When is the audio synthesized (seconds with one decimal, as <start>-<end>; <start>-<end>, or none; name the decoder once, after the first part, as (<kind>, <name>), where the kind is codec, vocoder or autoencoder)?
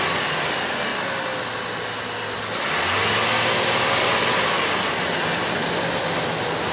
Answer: none